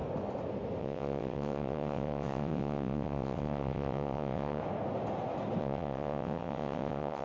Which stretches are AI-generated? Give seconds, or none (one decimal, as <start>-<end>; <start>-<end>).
0.8-4.6; 5.6-7.2